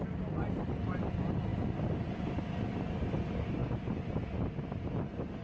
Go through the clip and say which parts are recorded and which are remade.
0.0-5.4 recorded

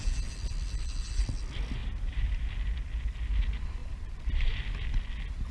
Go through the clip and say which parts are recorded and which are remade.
0.0-1.8 recorded; 1.8-2.4 remade; 2.4-3.8 recorded; 3.8-4.6 remade; 4.6-5.5 recorded

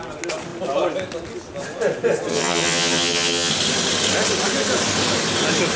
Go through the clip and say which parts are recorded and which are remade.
0.0-2.3 recorded; 2.3-3.5 remade; 3.5-5.8 recorded

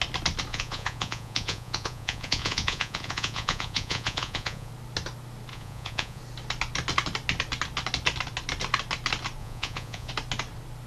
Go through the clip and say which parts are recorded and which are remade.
0.0-0.5 recorded; 0.5-4.7 remade; 4.7-5.5 recorded; 5.5-6.2 remade; 6.2-9.4 recorded; 9.4-10.1 remade; 10.1-10.9 recorded

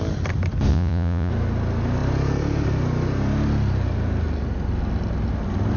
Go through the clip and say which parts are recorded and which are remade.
0.0-0.7 recorded; 0.7-1.3 remade; 1.3-5.8 recorded

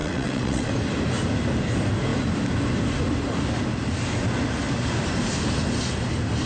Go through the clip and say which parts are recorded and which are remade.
0.0-0.7 remade; 0.7-6.5 recorded

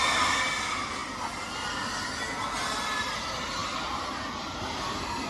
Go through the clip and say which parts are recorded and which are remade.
0.0-5.3 recorded

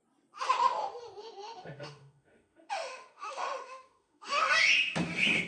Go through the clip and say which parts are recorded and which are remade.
0.0-1.2 recorded; 1.2-4.5 remade; 4.5-5.5 recorded